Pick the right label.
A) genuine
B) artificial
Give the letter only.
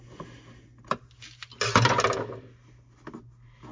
A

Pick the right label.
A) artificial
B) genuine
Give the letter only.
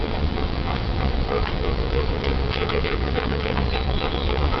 A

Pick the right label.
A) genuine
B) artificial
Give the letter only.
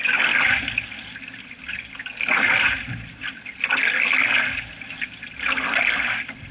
A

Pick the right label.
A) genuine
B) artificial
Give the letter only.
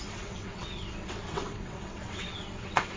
B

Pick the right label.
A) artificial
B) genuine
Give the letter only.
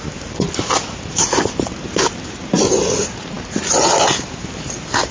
B